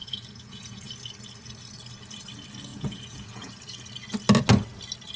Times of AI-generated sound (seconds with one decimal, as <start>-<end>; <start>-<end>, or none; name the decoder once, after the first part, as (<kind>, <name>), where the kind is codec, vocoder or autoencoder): 0.0-0.9 (vocoder, Vocos); 2.7-3.5